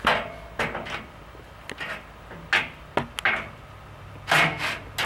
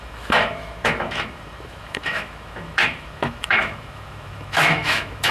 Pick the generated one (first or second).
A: second